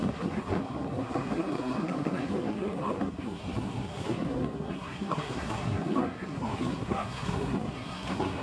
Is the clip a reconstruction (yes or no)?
yes